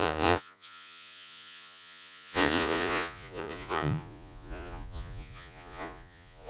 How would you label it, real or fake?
fake